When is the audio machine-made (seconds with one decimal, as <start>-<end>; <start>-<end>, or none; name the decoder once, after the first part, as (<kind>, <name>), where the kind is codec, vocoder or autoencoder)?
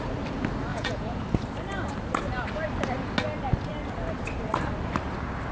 0.7-1.2 (vocoder, Vocos)